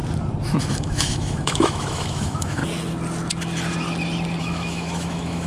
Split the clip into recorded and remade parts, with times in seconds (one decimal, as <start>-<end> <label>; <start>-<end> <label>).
0.0-0.6 recorded; 0.6-2.6 remade; 2.6-4.4 recorded; 4.4-5.5 remade